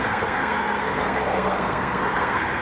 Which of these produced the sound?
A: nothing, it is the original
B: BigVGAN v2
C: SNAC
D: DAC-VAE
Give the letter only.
C